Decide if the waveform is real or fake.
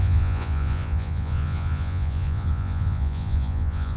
fake